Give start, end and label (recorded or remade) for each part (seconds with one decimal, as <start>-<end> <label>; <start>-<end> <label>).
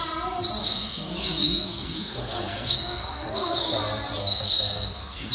0.0-0.6 recorded; 0.6-3.8 remade; 3.8-4.2 recorded; 4.2-5.3 remade